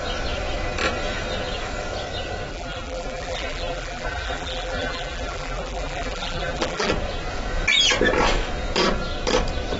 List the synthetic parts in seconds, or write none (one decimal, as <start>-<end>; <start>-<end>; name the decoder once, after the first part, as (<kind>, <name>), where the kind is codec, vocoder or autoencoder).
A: 2.5-6.9 (vocoder, BigVGAN v2)